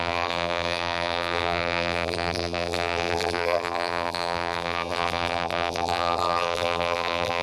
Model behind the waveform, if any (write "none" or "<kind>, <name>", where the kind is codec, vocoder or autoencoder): vocoder, BigVGAN v2